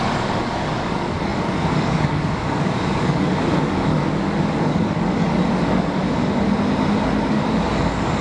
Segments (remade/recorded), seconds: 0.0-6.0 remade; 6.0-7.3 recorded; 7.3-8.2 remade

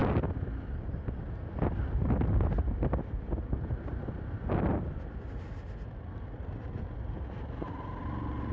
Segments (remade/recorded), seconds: 0.0-8.5 recorded

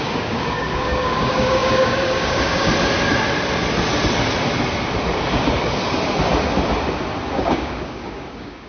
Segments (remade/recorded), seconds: 0.0-2.7 remade; 2.7-7.3 recorded; 7.3-8.7 remade

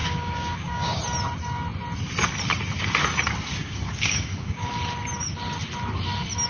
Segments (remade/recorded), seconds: 0.0-1.0 remade; 1.0-3.6 recorded; 3.6-4.8 remade; 4.8-6.5 recorded